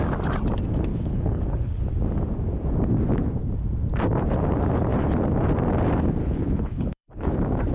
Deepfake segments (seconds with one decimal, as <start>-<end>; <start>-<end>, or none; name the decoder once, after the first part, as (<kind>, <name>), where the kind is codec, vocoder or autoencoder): 0.9-1.8 (codec, HILCodec); 6.2-7.3